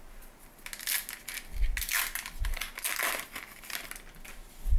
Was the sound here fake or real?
real